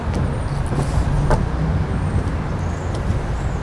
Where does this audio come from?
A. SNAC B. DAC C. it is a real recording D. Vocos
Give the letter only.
C